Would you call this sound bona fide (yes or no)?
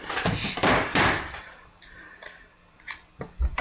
no